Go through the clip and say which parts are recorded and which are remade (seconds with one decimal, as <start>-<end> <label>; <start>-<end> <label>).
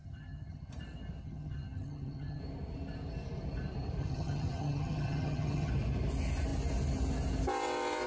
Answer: 0.0-0.7 remade; 0.7-1.2 recorded; 1.2-2.4 remade; 2.4-4.0 recorded; 4.0-5.7 remade; 5.7-8.1 recorded